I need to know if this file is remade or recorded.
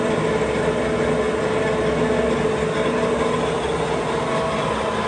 recorded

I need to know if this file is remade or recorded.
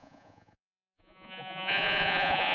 remade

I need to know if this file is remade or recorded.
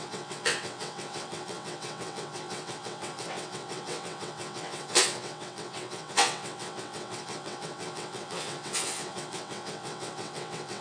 remade